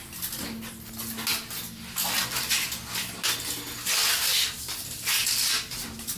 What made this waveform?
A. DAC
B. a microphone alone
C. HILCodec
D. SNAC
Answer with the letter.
B